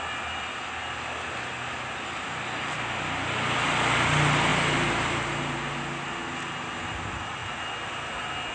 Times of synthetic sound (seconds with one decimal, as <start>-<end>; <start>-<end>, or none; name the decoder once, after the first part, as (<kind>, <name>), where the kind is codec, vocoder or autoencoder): none